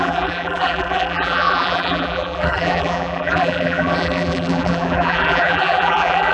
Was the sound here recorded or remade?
remade